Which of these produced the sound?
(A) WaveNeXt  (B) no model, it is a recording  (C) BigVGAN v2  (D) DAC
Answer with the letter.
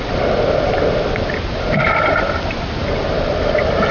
B